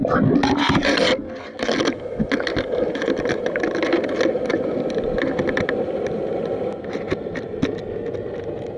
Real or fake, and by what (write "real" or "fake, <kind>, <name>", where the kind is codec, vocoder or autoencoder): real